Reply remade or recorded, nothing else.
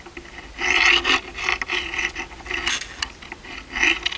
recorded